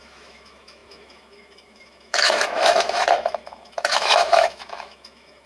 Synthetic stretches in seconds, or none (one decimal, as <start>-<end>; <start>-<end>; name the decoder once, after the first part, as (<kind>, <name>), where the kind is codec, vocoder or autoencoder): 0.0-5.5 (autoencoder, DAC-VAE)